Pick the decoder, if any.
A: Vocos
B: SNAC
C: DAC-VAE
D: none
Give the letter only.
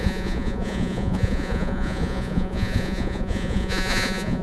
A